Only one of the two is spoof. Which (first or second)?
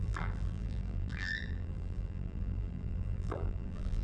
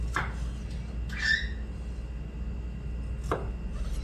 first